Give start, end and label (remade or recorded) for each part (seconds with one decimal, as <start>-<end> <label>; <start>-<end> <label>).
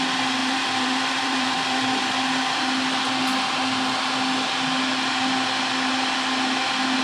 0.0-0.4 recorded; 0.4-2.1 remade; 2.1-7.0 recorded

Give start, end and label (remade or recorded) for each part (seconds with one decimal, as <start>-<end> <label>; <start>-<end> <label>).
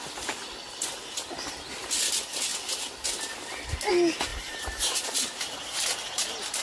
0.0-4.3 recorded; 4.3-6.6 remade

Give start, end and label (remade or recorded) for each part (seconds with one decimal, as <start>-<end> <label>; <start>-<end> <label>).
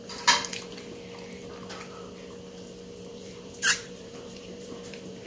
0.0-3.1 recorded; 3.1-5.3 remade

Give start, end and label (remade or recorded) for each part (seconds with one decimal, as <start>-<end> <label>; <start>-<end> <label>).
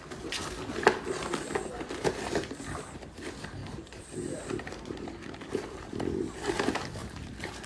0.0-3.6 recorded; 3.6-6.6 remade; 6.6-7.0 recorded; 7.0-7.7 remade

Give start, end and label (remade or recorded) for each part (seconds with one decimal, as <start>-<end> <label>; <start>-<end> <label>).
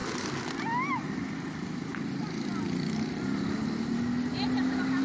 0.0-5.0 recorded